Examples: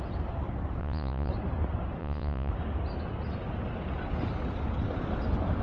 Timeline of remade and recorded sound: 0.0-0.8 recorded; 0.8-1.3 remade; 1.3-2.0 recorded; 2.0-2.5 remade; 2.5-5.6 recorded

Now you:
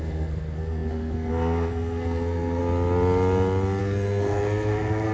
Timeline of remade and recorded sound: 0.0-2.6 remade; 2.6-3.8 recorded; 3.8-5.1 remade

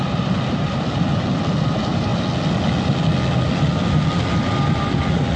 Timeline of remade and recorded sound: 0.0-2.1 remade; 2.1-5.4 recorded

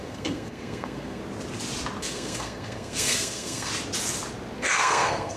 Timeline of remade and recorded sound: 0.0-1.2 remade; 1.2-2.0 recorded; 2.0-3.7 remade; 3.7-4.6 recorded; 4.6-5.4 remade

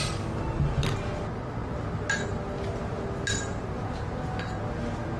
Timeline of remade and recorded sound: 0.0-5.2 recorded

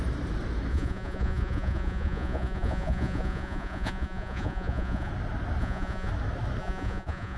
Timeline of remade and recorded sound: 0.0-0.7 recorded; 0.7-5.1 remade; 5.1-5.6 recorded; 5.6-6.1 remade; 6.1-6.6 recorded; 6.6-7.4 remade

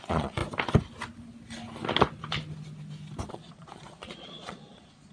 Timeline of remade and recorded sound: 0.0-0.4 remade; 0.4-3.3 recorded; 3.3-5.1 remade

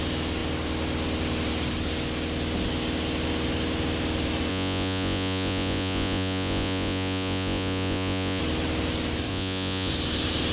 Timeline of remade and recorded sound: 0.0-4.5 recorded; 4.5-8.4 remade; 8.4-9.3 recorded; 9.3-9.9 remade; 9.9-10.5 recorded